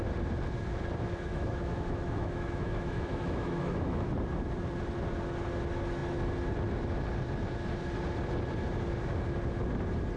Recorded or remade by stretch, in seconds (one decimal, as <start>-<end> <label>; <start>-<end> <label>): 0.0-1.3 recorded; 1.3-4.1 remade; 4.1-10.2 recorded